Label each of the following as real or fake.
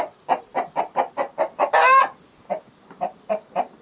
real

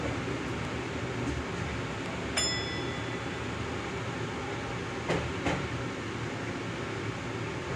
real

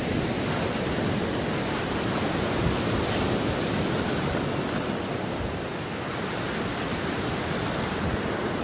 real